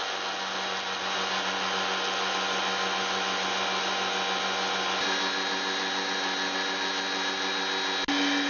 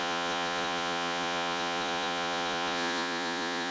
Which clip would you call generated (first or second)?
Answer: second